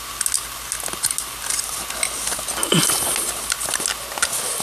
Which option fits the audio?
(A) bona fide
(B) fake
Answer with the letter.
A